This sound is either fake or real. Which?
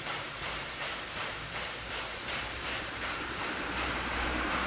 fake